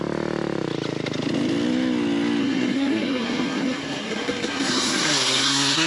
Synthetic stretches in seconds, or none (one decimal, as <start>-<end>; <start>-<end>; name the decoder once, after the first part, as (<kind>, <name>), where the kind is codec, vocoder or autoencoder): 2.4-5.9 (codec, SNAC)